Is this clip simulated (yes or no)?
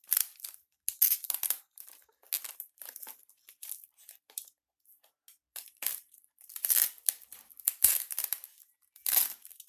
no